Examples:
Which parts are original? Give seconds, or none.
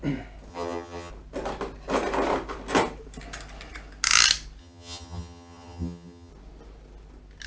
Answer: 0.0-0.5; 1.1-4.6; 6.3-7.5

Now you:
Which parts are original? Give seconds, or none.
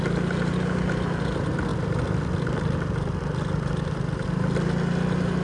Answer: 0.0-5.4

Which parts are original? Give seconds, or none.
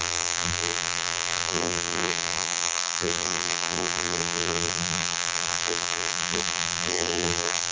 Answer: none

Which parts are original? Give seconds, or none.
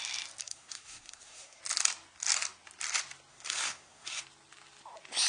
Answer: 0.0-0.4; 1.6-3.3; 4.2-5.3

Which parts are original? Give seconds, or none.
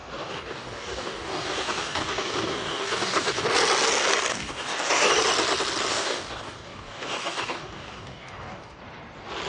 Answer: 3.5-4.3; 5.1-5.9; 8.8-9.5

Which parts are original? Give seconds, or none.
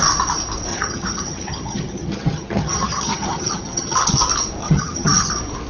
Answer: 0.0-0.7; 4.1-4.6; 5.3-5.7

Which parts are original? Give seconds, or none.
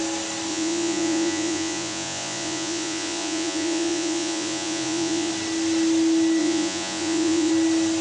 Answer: 0.0-0.5; 5.3-6.4; 7.5-8.0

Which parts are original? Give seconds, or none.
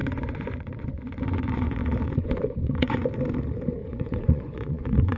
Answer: 3.1-3.8